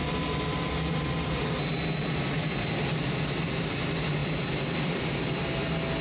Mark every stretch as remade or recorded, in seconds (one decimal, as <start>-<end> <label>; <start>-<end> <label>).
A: 0.0-0.7 remade; 0.7-4.2 recorded; 4.2-5.4 remade; 5.4-6.0 recorded